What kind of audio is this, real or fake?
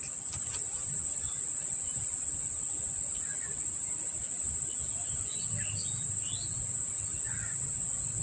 real